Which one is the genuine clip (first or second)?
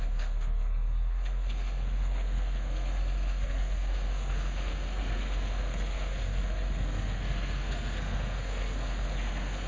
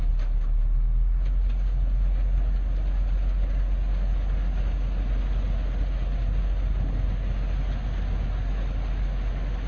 second